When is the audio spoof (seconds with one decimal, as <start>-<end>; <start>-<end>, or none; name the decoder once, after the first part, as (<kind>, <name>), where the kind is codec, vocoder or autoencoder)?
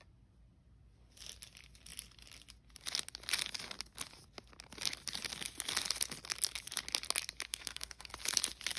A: 7.5-8.1 (codec, SNAC)